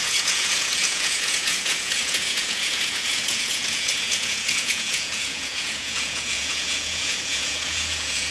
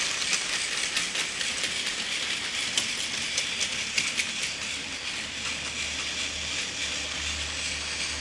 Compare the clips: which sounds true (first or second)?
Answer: second